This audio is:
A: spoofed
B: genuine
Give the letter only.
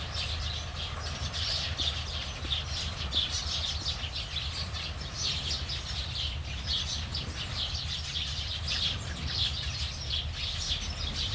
B